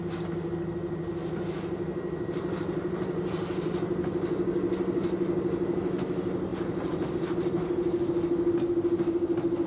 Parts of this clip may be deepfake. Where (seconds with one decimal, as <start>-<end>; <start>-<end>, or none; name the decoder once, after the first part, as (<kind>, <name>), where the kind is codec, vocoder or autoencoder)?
none